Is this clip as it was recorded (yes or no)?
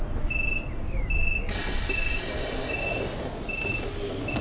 yes